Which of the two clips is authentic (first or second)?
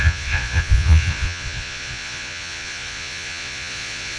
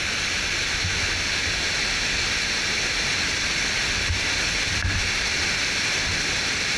second